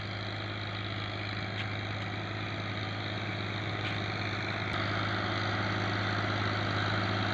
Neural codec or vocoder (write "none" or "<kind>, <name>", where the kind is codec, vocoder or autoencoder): none